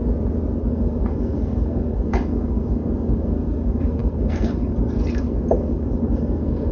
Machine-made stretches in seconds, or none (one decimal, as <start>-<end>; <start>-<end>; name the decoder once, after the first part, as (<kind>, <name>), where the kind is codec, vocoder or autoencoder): 0.7-6.7 (codec, SNAC)